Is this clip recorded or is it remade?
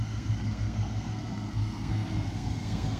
remade